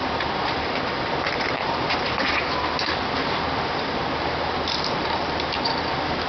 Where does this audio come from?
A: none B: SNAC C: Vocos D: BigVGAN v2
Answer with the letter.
D